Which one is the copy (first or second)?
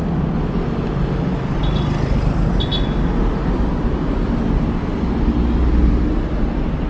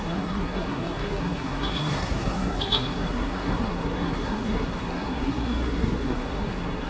second